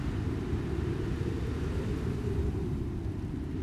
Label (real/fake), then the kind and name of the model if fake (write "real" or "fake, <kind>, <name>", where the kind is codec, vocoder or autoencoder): real